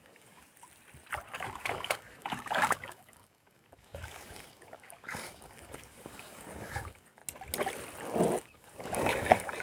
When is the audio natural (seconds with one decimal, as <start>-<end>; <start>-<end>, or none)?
0.5-1.3; 7.2-8.4